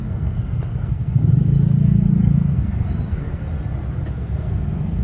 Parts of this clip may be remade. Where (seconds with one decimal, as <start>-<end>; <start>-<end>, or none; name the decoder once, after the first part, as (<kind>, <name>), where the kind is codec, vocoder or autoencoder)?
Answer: 0.0-1.2 (codec, SNAC); 2.2-3.4; 4.1-5.0